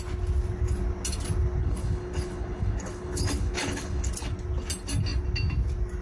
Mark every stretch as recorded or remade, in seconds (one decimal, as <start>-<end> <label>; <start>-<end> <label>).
0.0-1.6 recorded; 1.6-4.1 remade; 4.1-6.0 recorded